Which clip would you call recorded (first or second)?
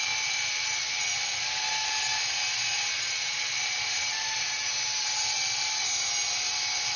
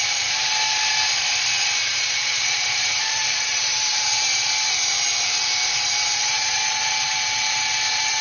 first